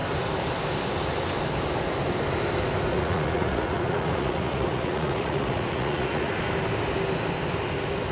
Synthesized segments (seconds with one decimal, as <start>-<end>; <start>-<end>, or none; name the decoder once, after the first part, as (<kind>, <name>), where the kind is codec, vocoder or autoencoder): 2.9-6.4 (vocoder, Vocos)